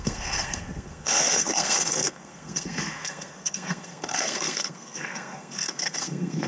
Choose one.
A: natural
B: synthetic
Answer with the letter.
B